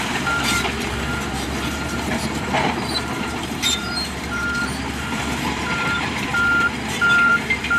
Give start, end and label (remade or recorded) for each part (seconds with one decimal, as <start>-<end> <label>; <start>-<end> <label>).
0.0-7.3 remade; 7.3-7.8 recorded

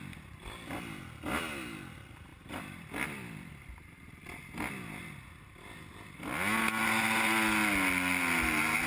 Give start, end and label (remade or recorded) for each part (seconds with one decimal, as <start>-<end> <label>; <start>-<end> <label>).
0.0-2.3 recorded; 2.3-3.5 remade; 3.5-8.9 recorded

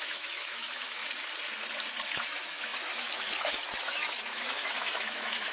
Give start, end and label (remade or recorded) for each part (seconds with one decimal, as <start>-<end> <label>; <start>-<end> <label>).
0.0-1.0 remade; 1.0-2.1 recorded; 2.1-5.5 remade

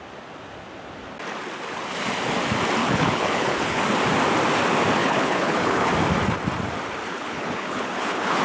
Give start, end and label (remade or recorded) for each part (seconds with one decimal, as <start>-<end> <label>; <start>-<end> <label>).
0.0-2.8 recorded; 2.8-3.8 remade; 3.8-5.0 recorded; 5.0-5.9 remade; 5.9-7.1 recorded; 7.1-8.4 remade

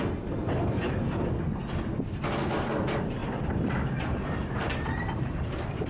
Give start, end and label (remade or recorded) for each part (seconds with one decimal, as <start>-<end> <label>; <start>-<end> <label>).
0.0-0.4 recorded; 0.4-1.1 remade; 1.1-3.2 recorded; 3.2-5.9 remade

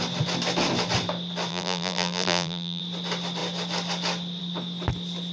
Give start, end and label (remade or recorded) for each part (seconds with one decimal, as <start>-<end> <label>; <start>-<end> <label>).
0.0-1.5 recorded; 1.5-2.8 remade; 2.8-5.3 recorded

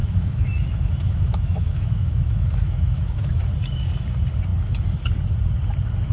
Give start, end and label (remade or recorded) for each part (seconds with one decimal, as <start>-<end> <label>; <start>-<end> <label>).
0.0-3.3 remade; 3.3-6.1 recorded